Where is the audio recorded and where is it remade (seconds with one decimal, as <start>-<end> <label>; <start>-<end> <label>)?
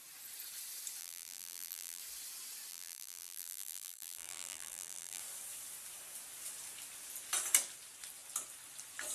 0.0-1.0 recorded; 1.0-2.0 remade; 2.0-2.7 recorded; 2.7-5.2 remade; 5.2-9.1 recorded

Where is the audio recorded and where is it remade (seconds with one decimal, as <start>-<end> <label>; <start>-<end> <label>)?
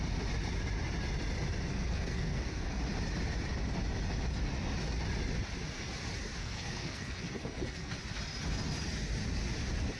0.0-1.7 recorded; 1.7-2.8 remade; 2.8-6.4 recorded; 6.4-7.9 remade; 7.9-10.0 recorded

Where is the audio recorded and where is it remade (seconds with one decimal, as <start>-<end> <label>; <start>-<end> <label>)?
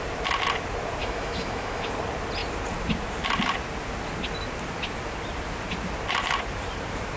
0.0-1.0 recorded; 1.0-1.9 remade; 1.9-7.2 recorded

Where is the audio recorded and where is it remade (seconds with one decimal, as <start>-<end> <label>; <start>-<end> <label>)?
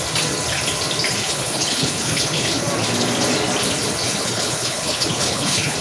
0.0-1.2 recorded; 1.2-2.6 remade; 2.6-4.2 recorded; 4.2-5.8 remade